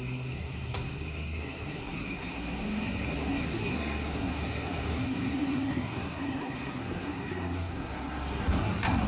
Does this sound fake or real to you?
fake